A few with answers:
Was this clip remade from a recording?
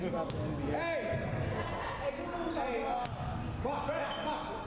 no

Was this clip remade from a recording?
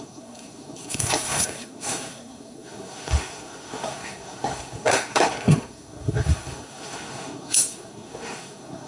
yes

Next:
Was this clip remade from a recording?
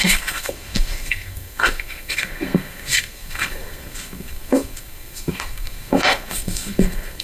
yes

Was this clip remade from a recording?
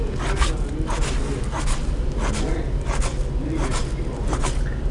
no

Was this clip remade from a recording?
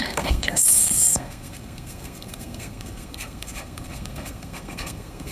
yes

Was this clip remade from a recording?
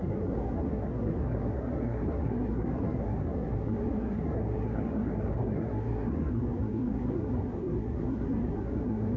yes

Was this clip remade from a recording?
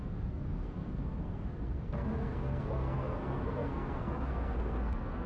yes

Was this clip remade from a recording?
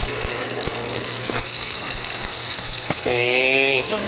yes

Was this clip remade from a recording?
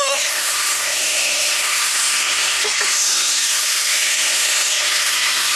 yes